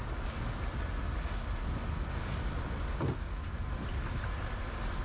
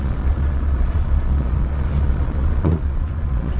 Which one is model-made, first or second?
second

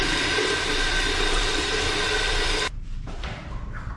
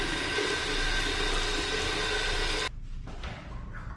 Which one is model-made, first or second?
first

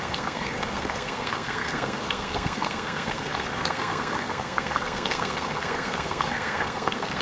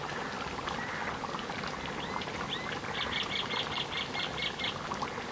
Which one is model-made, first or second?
first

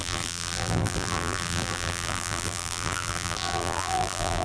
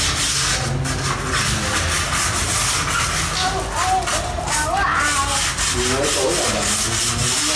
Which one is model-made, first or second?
first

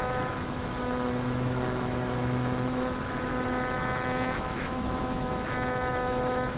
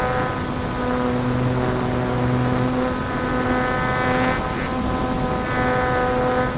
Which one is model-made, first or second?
first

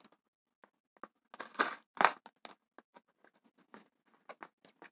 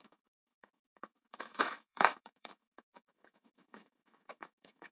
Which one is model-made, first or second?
second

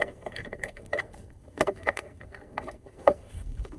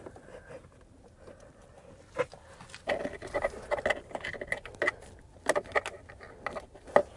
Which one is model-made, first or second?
first